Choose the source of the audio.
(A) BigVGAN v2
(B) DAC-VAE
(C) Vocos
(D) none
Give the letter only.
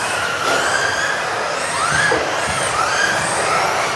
A